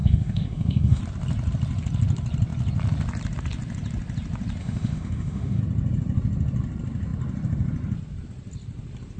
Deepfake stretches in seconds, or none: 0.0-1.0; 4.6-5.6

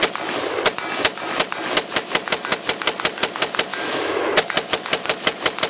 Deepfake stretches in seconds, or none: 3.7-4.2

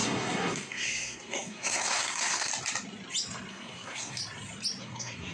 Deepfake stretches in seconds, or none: 0.0-2.5; 3.5-4.2; 4.8-5.3